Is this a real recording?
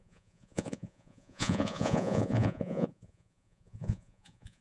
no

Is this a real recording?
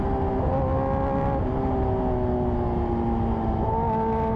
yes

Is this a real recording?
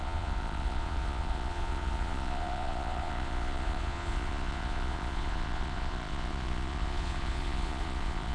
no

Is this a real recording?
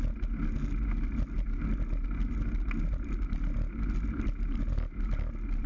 yes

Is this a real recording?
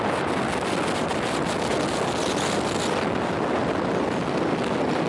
yes